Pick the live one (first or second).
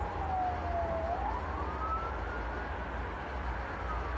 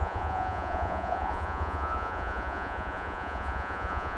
first